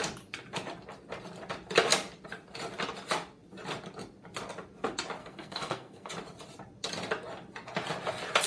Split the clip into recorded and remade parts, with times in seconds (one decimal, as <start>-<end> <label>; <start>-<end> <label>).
0.0-5.2 recorded; 5.2-6.1 remade; 6.1-8.5 recorded